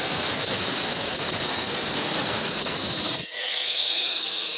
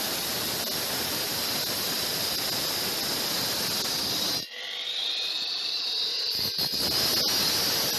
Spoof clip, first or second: first